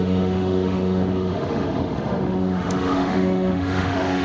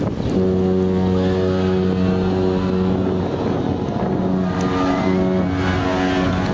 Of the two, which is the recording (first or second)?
second